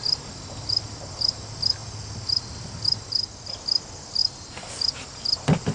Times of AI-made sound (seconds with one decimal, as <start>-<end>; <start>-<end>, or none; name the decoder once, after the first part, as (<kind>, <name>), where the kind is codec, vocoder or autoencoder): 1.8-3.0 (vocoder, BigVGAN v2)